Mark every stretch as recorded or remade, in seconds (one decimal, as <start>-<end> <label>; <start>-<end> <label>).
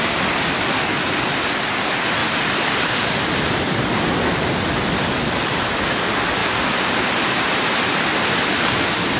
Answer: 0.0-9.2 recorded